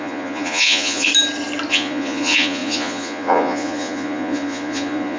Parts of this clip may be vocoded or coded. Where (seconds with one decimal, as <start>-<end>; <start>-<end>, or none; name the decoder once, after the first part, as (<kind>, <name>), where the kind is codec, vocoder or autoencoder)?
0.0-1.1 (vocoder, Vocos); 1.7-5.2